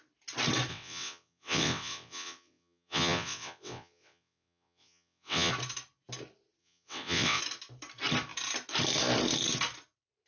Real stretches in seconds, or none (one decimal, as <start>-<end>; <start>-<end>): 0.0-0.7; 5.5-6.6; 7.4-10.3